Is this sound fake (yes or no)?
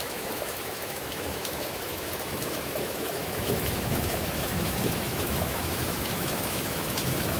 yes